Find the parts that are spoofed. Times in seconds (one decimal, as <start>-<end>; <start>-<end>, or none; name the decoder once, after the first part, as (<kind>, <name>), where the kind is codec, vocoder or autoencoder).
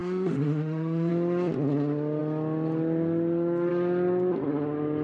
0.0-1.1 (autoencoder, DAC-VAE)